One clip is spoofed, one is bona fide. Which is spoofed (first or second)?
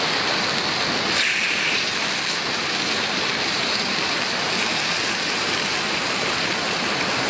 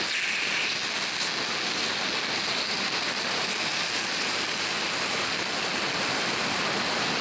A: first